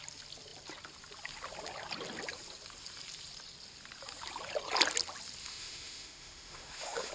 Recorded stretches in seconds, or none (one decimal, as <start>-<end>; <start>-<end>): 0.0-5.4